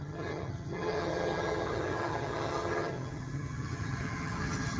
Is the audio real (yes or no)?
no